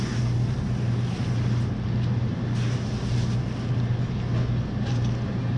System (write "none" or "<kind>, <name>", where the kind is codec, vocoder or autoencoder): none